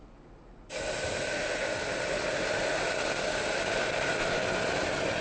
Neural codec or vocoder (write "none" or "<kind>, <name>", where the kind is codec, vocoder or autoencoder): none